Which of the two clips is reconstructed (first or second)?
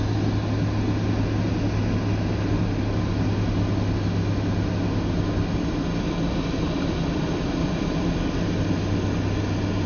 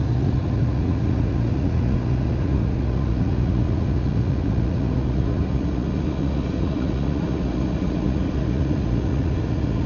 second